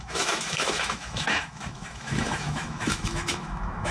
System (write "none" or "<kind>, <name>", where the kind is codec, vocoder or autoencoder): autoencoder, DAC-VAE